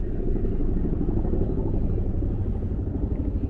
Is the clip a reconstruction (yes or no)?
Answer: no